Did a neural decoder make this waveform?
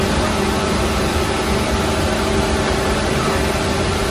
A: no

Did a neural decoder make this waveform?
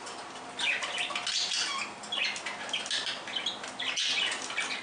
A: no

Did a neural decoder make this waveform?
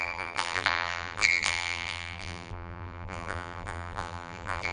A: yes